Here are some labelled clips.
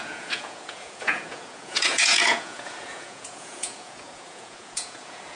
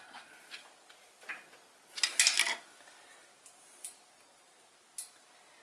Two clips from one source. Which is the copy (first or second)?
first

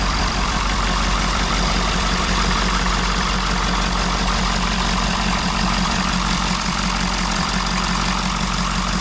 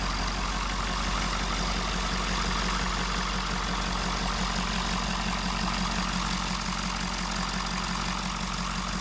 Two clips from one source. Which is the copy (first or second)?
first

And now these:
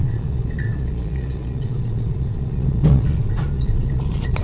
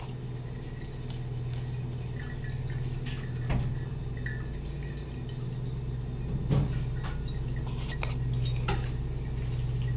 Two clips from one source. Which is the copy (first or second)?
first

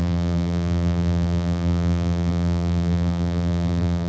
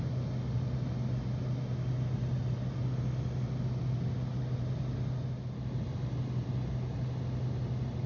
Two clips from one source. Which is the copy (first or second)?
first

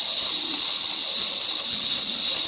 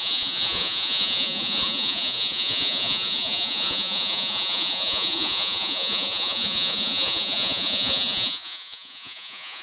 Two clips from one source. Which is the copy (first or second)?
second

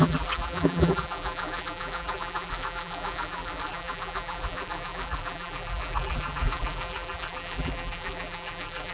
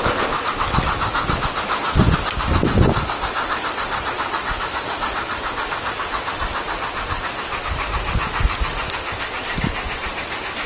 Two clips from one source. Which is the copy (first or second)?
first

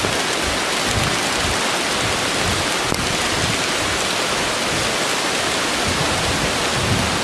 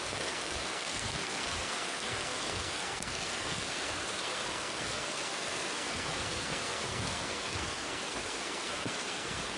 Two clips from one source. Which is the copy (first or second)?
second